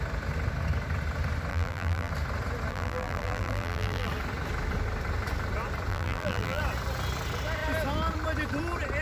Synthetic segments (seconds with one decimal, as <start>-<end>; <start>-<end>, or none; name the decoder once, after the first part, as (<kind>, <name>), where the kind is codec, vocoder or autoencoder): 1.5-2.1 (vocoder, BigVGAN v2); 2.7-4.1; 5.9-6.6